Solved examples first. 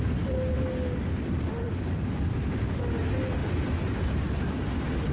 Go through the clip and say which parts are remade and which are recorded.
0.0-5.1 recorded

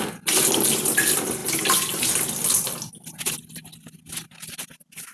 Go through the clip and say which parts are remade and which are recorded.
0.0-5.1 recorded